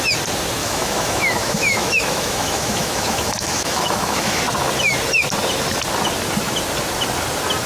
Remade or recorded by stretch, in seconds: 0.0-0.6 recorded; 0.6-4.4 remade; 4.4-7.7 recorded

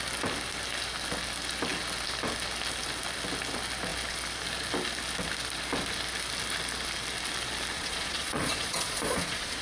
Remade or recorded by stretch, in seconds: 0.0-7.7 recorded; 7.7-9.6 remade

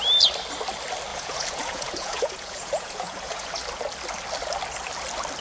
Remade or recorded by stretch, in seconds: 0.0-1.1 recorded; 1.1-3.5 remade; 3.5-5.4 recorded

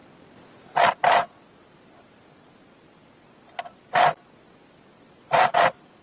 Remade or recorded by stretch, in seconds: 0.0-6.0 recorded

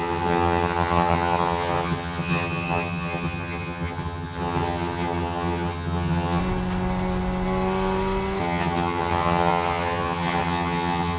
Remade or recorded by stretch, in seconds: 0.0-6.4 remade; 6.4-8.4 recorded; 8.4-11.2 remade